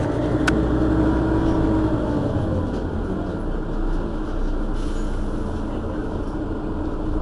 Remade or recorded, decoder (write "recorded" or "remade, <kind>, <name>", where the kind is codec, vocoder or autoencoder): recorded